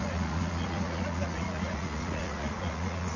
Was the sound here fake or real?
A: fake